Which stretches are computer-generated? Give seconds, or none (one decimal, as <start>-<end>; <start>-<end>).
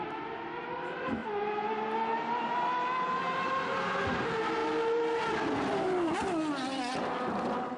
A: none